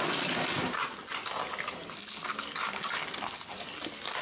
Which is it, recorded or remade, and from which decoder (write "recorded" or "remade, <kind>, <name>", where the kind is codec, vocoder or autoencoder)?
recorded